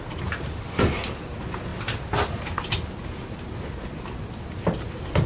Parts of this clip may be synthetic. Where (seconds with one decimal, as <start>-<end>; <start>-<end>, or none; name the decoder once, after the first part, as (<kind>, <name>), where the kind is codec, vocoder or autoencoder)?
none